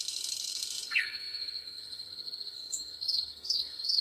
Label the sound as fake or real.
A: fake